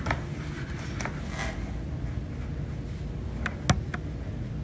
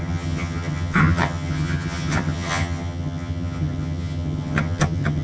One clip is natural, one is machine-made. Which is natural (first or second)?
first